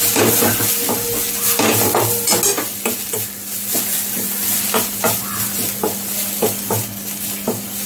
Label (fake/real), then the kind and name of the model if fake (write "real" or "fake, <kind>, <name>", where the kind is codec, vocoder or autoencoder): real